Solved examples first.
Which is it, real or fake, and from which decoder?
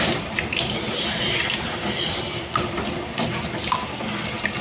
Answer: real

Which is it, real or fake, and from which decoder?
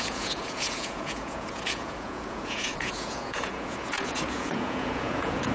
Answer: fake, vocoder, Vocos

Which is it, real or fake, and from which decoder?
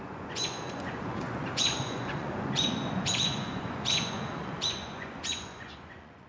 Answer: fake, vocoder, Vocos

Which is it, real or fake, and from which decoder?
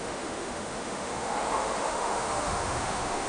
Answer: fake, autoencoder, DAC-VAE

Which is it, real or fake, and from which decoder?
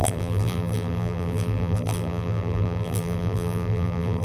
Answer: fake, vocoder, BigVGAN v2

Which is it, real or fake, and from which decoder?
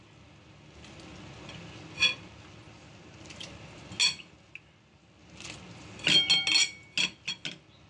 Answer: real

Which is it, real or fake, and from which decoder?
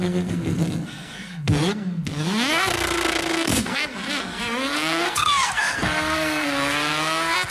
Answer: fake, codec, SNAC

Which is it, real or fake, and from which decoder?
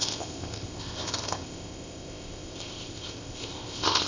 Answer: fake, codec, ZipCodec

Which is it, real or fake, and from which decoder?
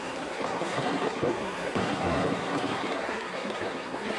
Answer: fake, codec, SNAC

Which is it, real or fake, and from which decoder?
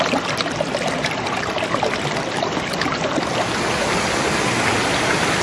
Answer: real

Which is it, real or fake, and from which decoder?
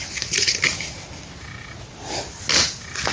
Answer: real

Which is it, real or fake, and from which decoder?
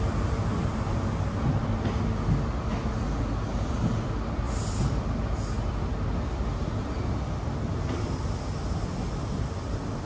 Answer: real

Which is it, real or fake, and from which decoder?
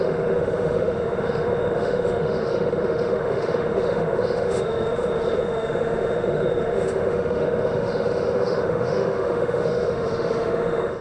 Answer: fake, autoencoder, DAC-VAE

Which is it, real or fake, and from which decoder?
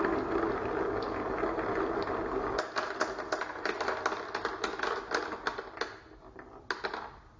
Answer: real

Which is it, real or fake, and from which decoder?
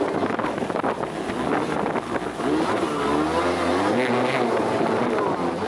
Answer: real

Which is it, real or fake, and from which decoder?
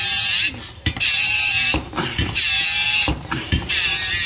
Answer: fake, vocoder, BigVGAN v2